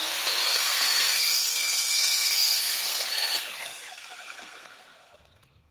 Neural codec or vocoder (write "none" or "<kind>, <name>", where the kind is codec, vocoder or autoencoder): codec, SNAC